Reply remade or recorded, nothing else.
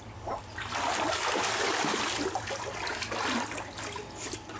recorded